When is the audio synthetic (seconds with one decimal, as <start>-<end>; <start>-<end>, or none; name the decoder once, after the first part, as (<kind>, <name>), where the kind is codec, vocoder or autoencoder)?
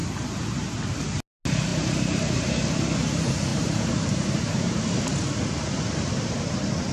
1.7-2.6 (vocoder, BigVGAN v2); 3.5-5.0